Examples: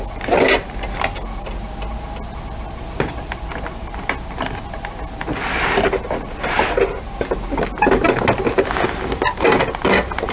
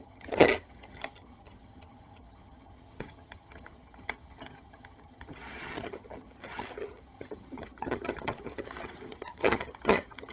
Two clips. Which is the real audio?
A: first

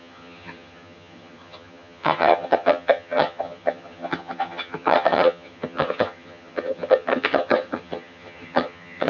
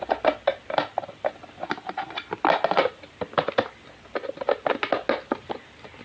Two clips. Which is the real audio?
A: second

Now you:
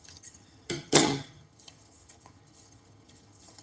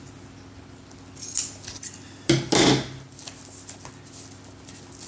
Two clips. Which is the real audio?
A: second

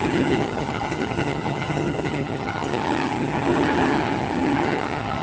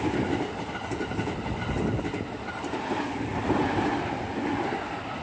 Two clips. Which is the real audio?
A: second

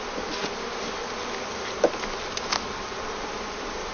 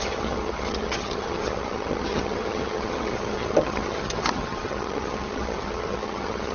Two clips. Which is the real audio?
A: first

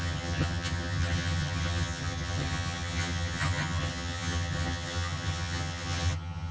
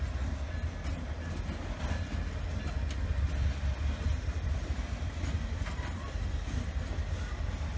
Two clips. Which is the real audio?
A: second